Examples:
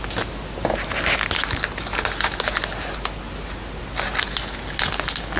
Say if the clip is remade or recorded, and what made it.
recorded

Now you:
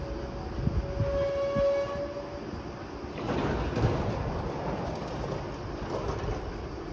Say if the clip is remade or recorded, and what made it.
recorded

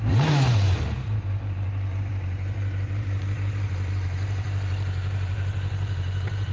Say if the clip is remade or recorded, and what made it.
remade, vocoder, BigVGAN v2